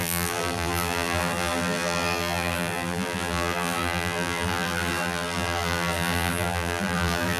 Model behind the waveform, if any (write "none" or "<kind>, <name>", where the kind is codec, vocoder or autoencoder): vocoder, BigVGAN v2